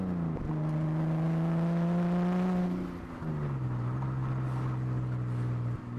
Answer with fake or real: real